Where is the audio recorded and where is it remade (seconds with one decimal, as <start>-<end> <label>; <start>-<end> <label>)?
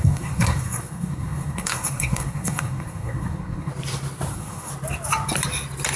0.0-3.7 remade; 3.7-4.3 recorded; 4.3-4.7 remade; 4.7-6.0 recorded